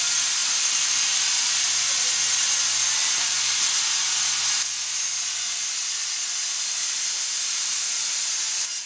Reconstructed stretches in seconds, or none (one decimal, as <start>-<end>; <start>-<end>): 0.4-2.2; 6.8-7.8